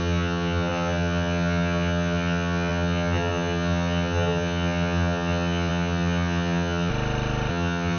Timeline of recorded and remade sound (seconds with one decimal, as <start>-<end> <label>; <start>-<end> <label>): 0.0-6.9 remade; 6.9-7.5 recorded; 7.5-8.0 remade